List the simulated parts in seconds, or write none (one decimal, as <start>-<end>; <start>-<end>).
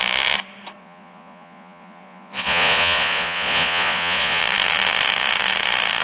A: 0.8-4.4